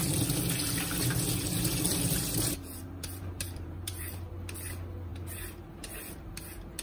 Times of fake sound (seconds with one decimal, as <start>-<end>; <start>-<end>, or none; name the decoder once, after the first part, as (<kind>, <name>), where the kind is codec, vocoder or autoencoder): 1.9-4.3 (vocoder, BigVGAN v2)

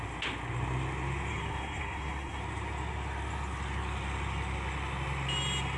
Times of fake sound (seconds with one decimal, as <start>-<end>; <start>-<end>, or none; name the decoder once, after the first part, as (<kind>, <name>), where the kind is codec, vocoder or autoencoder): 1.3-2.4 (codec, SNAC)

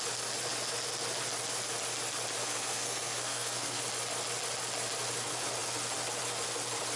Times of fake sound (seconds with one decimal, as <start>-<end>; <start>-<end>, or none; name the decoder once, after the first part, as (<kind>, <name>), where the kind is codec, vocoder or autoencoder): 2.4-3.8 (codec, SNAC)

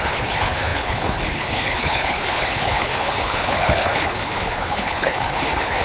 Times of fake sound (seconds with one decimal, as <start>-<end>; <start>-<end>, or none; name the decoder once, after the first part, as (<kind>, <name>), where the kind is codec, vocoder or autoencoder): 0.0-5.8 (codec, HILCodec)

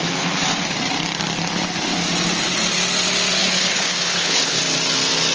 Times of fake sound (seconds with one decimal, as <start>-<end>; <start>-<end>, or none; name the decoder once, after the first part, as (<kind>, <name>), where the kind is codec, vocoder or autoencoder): 3.4-4.6 (codec, HILCodec)

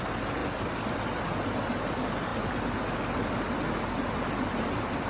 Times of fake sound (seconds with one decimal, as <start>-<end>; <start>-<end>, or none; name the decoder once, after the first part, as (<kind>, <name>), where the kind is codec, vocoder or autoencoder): none